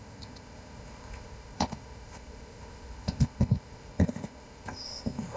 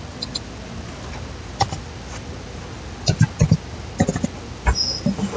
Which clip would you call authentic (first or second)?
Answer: second